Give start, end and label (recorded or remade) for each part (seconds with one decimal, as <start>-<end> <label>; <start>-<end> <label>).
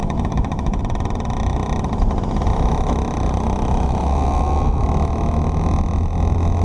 0.0-0.8 remade; 0.8-6.6 recorded